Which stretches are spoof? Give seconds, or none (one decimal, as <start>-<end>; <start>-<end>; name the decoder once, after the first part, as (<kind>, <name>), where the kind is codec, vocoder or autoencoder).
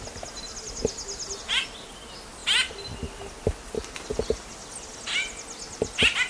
none